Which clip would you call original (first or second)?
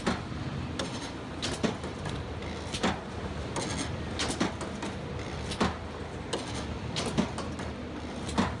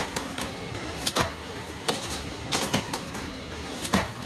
first